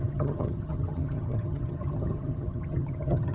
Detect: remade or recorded remade